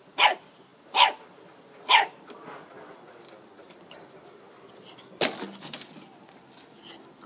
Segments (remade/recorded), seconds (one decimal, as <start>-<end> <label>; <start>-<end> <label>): 0.0-7.3 recorded